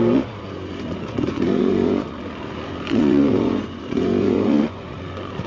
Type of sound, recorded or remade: remade